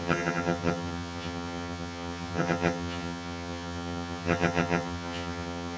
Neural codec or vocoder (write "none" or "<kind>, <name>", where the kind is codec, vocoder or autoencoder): vocoder, HiFi-GAN